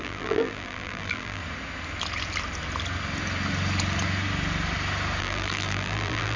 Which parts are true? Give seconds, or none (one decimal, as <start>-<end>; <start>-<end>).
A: 1.4-5.2